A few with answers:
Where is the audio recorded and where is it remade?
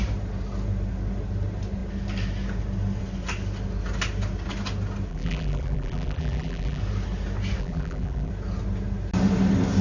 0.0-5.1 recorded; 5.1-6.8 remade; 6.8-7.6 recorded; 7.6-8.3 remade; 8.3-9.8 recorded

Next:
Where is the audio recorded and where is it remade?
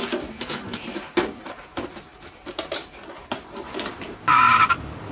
0.0-1.1 recorded; 1.1-4.0 remade; 4.0-5.1 recorded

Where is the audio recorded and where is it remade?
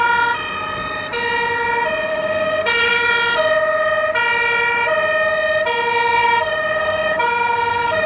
0.0-2.1 recorded; 2.1-3.1 remade; 3.1-6.2 recorded; 6.2-8.1 remade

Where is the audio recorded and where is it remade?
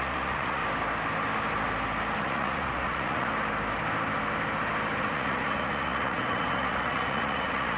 0.0-0.6 remade; 0.6-2.2 recorded; 2.2-3.3 remade; 3.3-5.0 recorded; 5.0-7.8 remade